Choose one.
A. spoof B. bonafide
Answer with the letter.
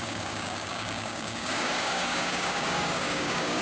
A